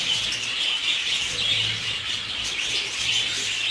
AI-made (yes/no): no